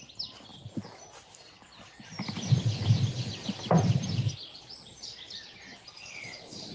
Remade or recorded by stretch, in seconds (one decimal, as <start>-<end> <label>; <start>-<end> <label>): 0.0-6.7 recorded